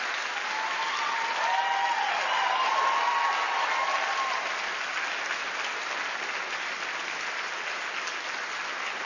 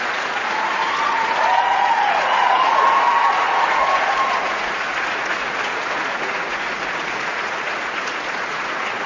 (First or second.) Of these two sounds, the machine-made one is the second